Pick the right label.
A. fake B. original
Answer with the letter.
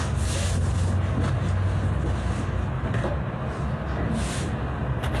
B